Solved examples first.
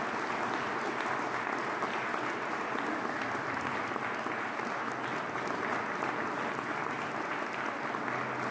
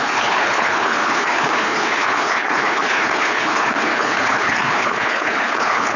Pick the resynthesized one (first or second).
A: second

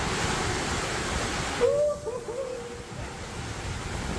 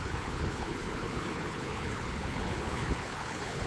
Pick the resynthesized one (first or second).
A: second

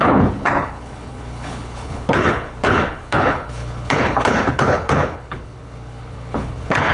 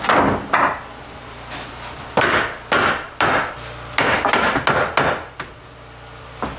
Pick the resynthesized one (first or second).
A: first